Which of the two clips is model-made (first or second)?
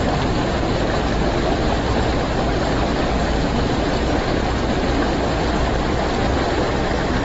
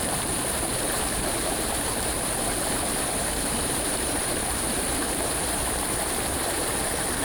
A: second